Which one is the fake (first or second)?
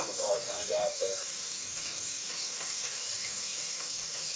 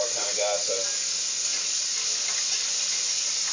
first